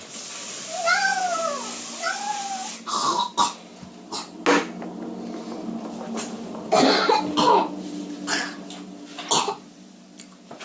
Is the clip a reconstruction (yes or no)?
no